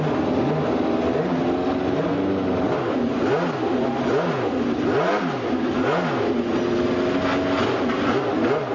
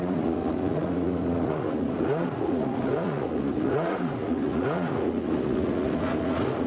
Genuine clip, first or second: first